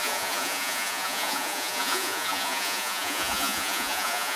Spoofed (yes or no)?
yes